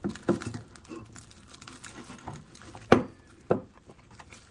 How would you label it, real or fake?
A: real